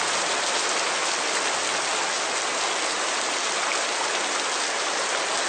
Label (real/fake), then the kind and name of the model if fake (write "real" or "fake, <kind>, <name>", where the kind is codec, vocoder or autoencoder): real